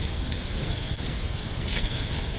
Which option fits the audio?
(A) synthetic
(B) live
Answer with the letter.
A